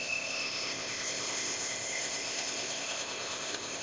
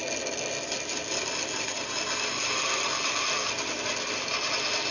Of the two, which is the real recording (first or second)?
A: second